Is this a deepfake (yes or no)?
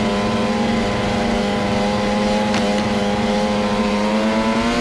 no